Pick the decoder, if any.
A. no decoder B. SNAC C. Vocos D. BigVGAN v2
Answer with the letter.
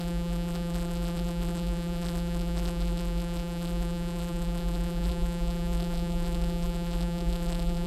D